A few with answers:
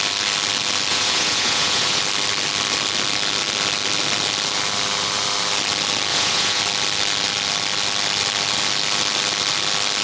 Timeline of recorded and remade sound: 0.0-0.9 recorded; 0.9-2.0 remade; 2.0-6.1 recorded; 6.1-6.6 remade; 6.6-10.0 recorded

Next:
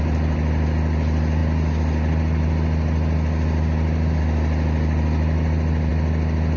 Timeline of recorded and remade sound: 0.0-6.6 recorded

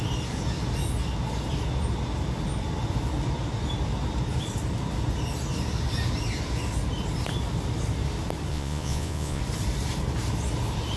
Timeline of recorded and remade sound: 0.0-8.5 recorded; 8.5-9.4 remade; 9.4-11.0 recorded

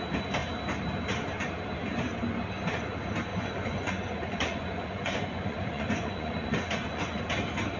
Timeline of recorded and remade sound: 0.0-3.3 recorded; 3.3-7.2 remade; 7.2-7.8 recorded

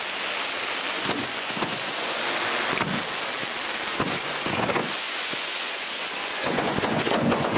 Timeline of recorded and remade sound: 0.0-0.9 recorded; 0.9-2.2 remade; 2.2-3.9 recorded; 3.9-7.6 remade